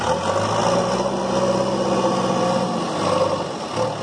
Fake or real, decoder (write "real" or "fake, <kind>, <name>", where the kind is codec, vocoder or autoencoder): real